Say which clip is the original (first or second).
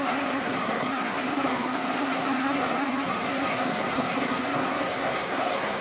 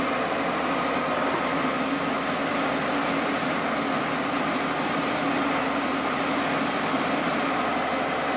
second